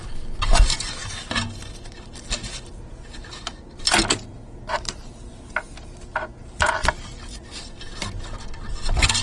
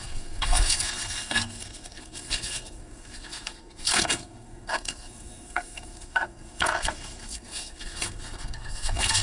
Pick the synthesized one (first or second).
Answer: second